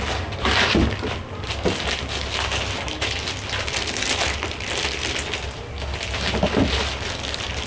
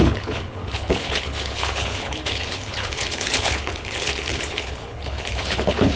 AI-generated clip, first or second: second